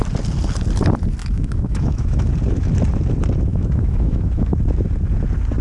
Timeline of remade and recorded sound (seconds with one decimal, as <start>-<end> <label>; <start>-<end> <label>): 0.0-1.2 recorded; 1.2-2.3 remade; 2.3-3.5 recorded; 3.5-4.6 remade; 4.6-5.6 recorded